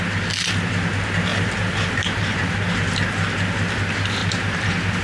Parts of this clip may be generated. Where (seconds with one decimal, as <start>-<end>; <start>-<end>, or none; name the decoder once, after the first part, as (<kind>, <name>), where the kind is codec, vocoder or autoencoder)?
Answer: 1.3-2.5 (vocoder, BigVGAN v2); 4.2-5.0